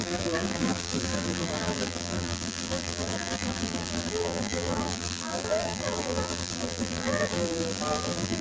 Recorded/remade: remade